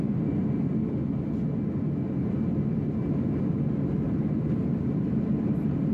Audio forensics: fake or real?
real